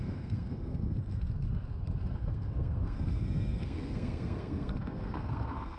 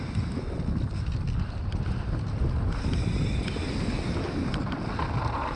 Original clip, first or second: second